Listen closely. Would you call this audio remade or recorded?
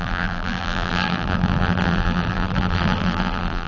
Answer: remade